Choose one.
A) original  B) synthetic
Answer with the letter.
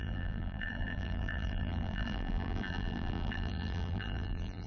B